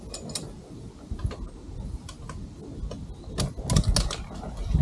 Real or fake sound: real